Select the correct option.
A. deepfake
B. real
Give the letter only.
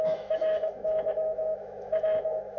A